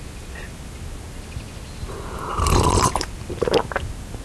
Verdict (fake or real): real